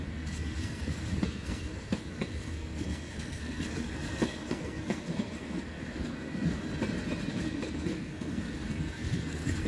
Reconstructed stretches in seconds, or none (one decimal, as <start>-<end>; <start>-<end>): 0.0-6.6; 7.3-9.7